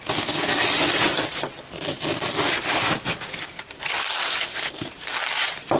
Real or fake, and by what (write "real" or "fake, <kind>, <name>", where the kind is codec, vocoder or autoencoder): real